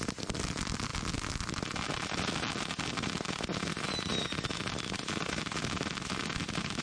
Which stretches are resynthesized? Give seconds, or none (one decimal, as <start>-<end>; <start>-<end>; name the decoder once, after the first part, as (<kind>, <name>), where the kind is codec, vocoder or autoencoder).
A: none